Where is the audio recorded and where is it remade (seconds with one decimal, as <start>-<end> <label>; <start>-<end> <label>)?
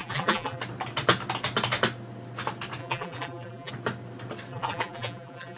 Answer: 0.0-0.6 remade; 0.6-2.8 recorded; 2.8-3.7 remade; 3.7-4.5 recorded; 4.5-5.6 remade